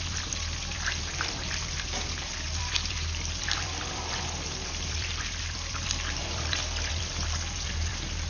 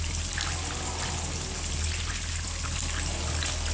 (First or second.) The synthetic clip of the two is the first